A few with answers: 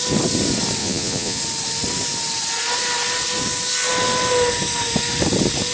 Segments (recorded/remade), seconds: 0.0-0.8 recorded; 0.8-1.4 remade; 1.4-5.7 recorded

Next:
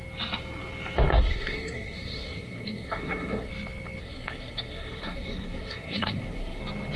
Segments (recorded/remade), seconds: 0.0-1.1 recorded; 1.1-3.5 remade; 3.5-4.0 recorded; 4.0-6.6 remade; 6.6-7.0 recorded

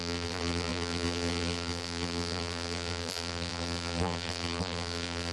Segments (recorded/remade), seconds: 0.0-5.3 remade